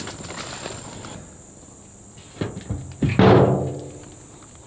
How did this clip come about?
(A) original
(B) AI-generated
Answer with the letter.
A